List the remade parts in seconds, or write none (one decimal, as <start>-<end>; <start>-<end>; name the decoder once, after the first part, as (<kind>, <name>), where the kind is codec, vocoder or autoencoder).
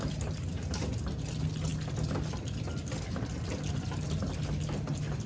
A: none